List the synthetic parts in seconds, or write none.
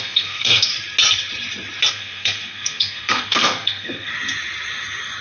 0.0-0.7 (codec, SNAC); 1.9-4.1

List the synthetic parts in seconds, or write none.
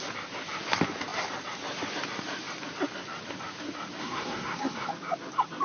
4.0-4.9 (codec, SNAC)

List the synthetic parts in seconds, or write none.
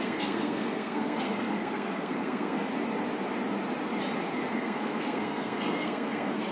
0.0-2.7 (codec, SNAC); 4.5-6.5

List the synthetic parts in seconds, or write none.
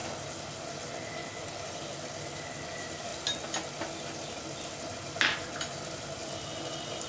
none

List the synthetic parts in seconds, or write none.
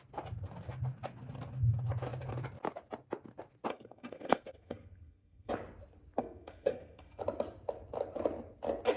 3.7-5.5 (codec, SNAC); 6.2-7.2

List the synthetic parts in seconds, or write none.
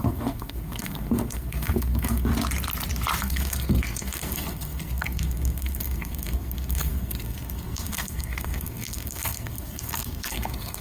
0.0-2.3 (codec, SNAC); 3.2-10.8